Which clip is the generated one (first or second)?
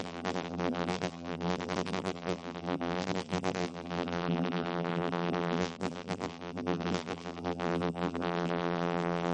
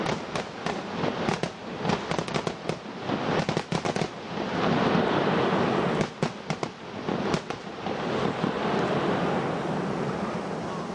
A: first